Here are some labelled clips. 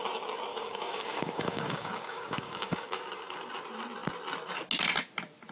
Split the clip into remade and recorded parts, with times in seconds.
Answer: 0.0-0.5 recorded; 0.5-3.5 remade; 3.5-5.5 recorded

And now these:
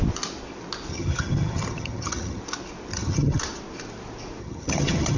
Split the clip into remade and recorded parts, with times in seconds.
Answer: 0.0-0.9 recorded; 0.9-2.4 remade; 2.4-2.9 recorded; 2.9-3.4 remade; 3.4-4.4 recorded; 4.4-5.2 remade

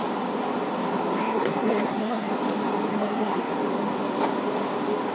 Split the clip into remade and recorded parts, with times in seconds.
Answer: 0.0-1.2 recorded; 1.2-2.3 remade; 2.3-2.9 recorded; 2.9-3.5 remade; 3.5-5.1 recorded

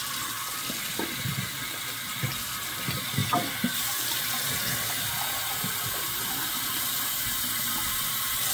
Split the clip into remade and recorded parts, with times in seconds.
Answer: 0.0-8.5 recorded

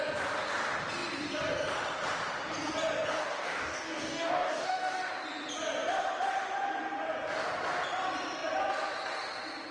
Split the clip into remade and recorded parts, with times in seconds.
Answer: 0.0-3.2 recorded; 3.2-5.1 remade; 5.1-9.7 recorded